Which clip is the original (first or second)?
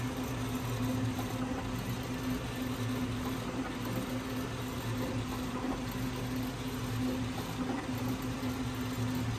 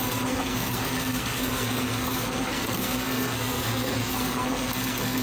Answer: first